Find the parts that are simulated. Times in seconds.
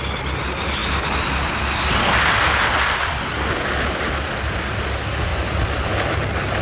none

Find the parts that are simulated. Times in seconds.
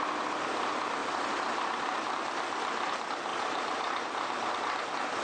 1.0-2.1 (vocoder, BigVGAN v2); 3.3-4.5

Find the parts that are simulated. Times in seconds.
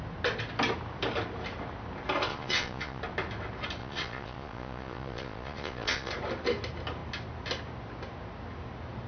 2.3-3.0 (vocoder, Vocos); 3.8-6.1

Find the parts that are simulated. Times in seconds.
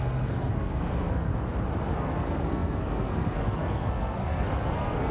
0.0-1.3 (codec, SNAC); 1.8-5.1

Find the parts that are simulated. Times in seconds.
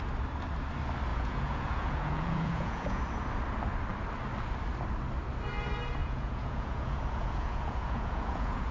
1.1-3.0 (vocoder, Vocos); 6.0-8.7